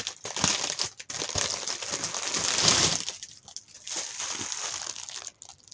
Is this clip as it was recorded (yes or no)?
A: yes